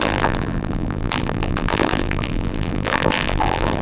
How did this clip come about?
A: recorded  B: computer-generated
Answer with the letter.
B